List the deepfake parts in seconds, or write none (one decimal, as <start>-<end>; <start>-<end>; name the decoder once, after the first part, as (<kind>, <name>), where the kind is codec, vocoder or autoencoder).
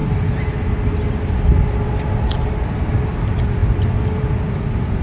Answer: none